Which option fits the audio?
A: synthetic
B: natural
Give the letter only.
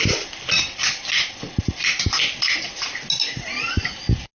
B